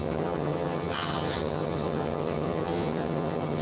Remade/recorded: remade